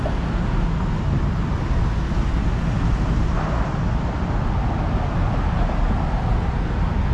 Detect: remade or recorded recorded